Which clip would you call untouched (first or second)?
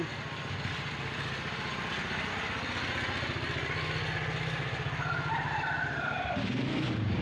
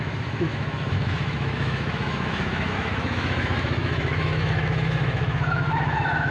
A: first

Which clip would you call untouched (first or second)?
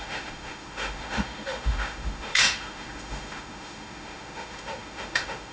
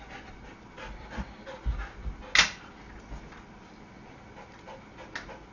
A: second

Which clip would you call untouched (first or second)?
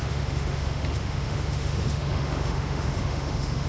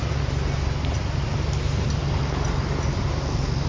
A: second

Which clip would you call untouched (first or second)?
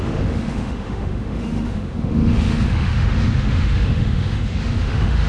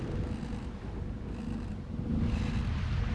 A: second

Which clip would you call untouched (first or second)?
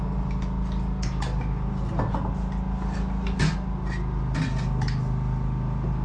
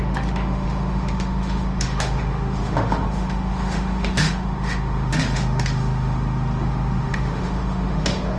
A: first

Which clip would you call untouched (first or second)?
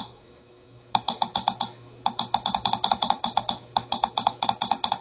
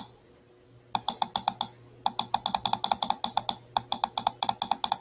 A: second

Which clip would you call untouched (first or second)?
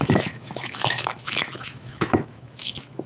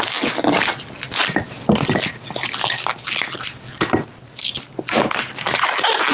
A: second